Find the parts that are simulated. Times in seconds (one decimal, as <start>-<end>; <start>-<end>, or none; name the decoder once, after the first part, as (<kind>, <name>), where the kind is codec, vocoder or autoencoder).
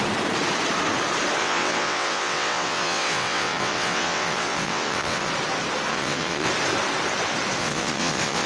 1.4-5.3 (vocoder, WaveNeXt); 5.9-6.5; 7.6-8.5